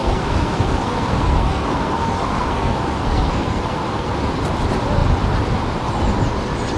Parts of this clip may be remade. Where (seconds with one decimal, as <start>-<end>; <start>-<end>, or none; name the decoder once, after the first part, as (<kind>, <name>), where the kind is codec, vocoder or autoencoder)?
0.0-4.1 (codec, SNAC)